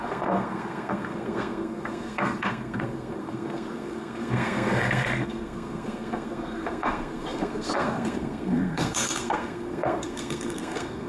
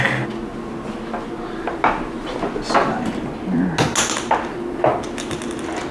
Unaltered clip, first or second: second